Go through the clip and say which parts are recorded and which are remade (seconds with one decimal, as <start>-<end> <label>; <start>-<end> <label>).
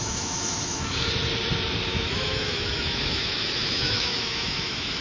0.0-1.1 remade; 1.1-1.9 recorded; 1.9-5.0 remade